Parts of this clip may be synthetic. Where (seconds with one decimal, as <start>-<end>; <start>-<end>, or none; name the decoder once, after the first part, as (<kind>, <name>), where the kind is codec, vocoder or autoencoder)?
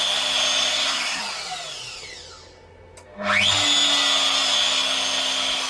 0.7-1.2 (codec, SNAC)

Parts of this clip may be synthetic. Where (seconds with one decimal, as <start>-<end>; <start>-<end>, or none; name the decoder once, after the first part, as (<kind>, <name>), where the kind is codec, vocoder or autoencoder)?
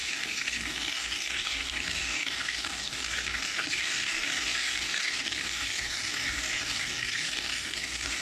0.0-8.2 (codec, DAC)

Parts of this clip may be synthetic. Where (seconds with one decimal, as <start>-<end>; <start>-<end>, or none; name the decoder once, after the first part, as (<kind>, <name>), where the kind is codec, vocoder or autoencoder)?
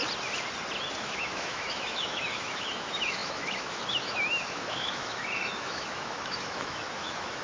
1.0-7.4 (autoencoder, DAC-VAE)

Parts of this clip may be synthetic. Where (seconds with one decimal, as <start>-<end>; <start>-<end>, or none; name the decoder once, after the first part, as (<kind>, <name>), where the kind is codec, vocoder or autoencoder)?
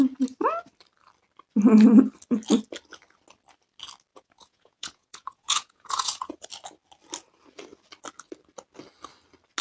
4.1-6.5 (vocoder, Vocos)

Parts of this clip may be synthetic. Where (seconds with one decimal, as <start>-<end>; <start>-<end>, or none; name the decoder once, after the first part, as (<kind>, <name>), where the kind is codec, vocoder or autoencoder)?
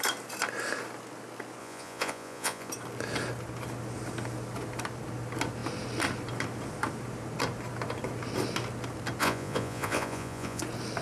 1.6-2.7 (vocoder, Vocos); 9.2-10.6